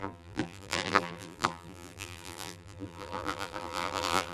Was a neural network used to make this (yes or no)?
yes